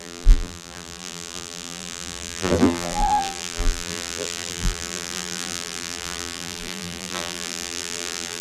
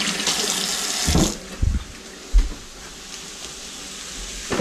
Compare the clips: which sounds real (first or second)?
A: second